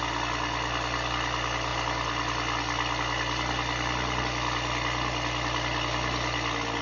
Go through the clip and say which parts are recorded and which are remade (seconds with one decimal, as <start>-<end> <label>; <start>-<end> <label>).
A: 0.0-6.8 recorded

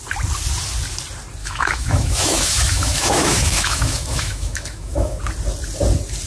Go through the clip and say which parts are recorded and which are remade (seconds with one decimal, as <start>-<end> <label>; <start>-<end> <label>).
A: 0.0-1.4 recorded; 1.4-5.2 remade; 5.2-6.3 recorded

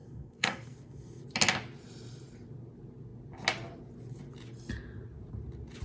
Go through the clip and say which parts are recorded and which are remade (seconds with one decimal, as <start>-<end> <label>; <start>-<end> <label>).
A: 0.0-1.2 remade; 1.2-5.8 recorded

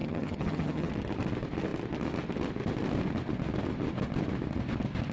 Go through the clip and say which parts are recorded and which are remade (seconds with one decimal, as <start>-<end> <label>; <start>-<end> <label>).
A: 0.0-0.9 remade; 0.9-5.1 recorded

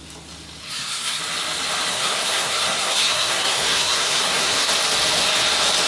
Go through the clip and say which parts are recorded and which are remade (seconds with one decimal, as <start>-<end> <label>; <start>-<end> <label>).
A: 0.0-0.6 recorded; 0.6-1.2 remade; 1.2-1.9 recorded; 1.9-4.7 remade; 4.7-5.9 recorded

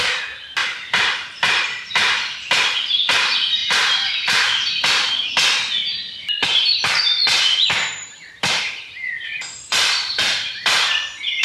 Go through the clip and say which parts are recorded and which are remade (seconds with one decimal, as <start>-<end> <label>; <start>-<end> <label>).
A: 0.0-3.6 recorded; 3.6-5.3 remade; 5.3-6.6 recorded; 6.6-10.6 remade; 10.6-11.4 recorded